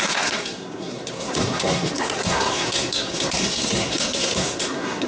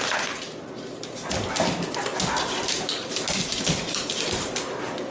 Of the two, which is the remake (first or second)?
first